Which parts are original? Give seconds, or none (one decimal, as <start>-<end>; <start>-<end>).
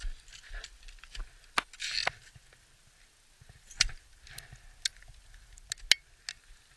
0.0-6.8